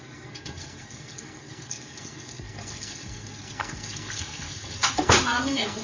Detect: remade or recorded remade